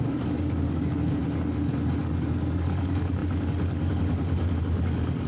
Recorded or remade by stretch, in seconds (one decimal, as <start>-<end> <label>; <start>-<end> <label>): 0.0-1.2 remade; 1.2-2.0 recorded; 2.0-5.3 remade